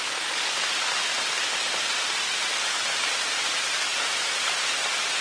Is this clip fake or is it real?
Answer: real